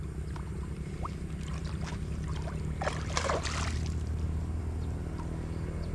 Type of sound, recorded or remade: recorded